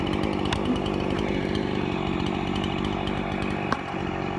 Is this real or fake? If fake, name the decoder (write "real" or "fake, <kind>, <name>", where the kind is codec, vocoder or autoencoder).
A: real